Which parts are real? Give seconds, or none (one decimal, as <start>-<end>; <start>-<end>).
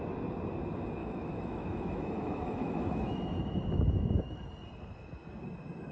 0.0-1.0; 4.5-5.9